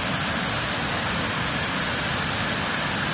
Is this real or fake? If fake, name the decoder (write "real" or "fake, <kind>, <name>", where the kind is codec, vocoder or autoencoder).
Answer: real